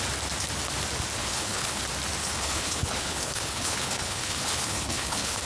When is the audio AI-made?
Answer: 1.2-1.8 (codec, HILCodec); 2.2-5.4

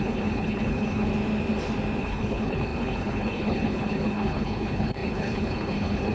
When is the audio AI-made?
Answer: 0.0-1.1 (codec, HILCodec); 2.0-6.1